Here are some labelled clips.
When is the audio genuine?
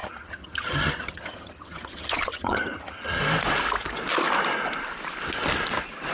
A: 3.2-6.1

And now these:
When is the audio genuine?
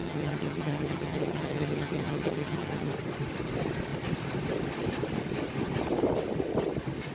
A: 2.9-7.1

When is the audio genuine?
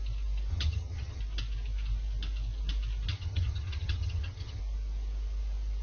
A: 0.0-0.5; 1.2-3.1; 4.6-5.8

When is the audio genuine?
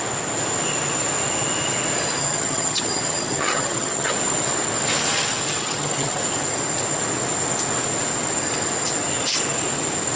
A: 0.0-2.2; 4.1-5.6; 6.2-10.2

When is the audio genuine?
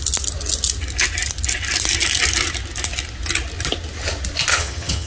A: 0.0-4.5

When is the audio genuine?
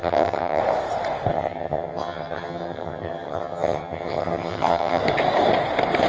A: 0.6-1.3; 5.0-6.1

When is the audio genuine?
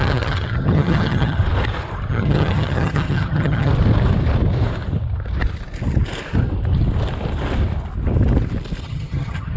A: 1.4-2.1; 3.7-8.8